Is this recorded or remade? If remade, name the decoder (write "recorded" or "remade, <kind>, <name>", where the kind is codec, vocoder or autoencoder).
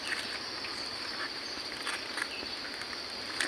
recorded